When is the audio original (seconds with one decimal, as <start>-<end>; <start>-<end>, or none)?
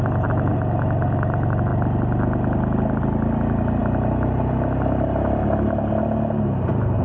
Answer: 0.0-7.0